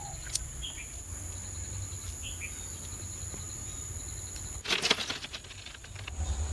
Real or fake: real